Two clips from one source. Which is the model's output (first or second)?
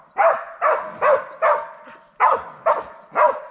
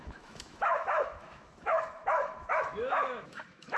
second